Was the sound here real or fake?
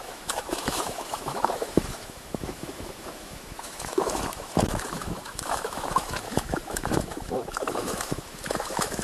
fake